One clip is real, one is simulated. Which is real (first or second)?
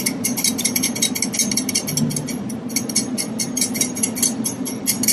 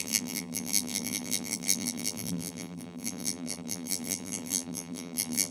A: first